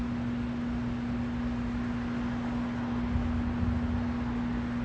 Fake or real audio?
real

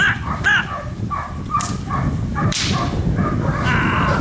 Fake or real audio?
fake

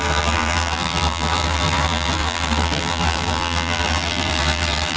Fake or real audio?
fake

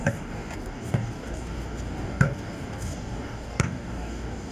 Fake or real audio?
fake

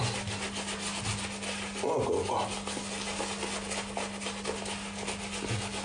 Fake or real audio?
real